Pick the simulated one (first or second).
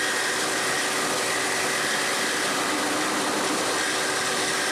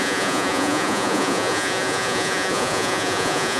second